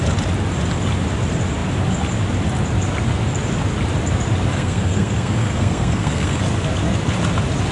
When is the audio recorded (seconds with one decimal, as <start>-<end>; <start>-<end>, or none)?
0.0-4.5; 6.4-7.7